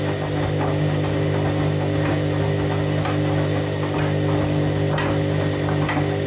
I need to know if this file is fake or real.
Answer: real